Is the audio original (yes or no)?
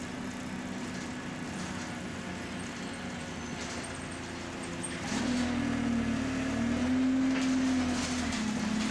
yes